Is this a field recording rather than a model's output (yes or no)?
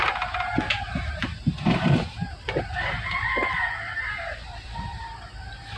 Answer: no